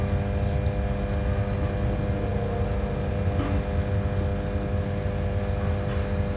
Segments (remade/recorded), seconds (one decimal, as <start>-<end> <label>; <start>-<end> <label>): 0.0-2.3 recorded; 2.3-3.1 remade; 3.1-4.3 recorded; 4.3-5.4 remade; 5.4-6.4 recorded